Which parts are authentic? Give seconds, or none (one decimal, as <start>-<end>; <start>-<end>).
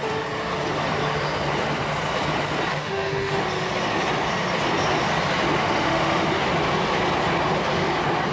0.0-2.7; 3.4-5.6; 6.4-8.3